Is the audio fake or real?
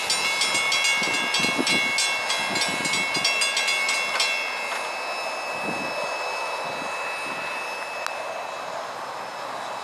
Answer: real